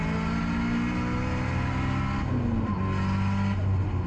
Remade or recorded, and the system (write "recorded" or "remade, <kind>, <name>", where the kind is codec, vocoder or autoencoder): recorded